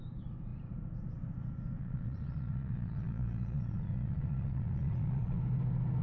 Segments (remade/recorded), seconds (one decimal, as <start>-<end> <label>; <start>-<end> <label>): 0.0-1.8 recorded; 1.8-5.4 remade; 5.4-6.0 recorded